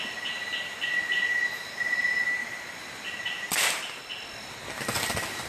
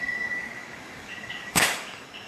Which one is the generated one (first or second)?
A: second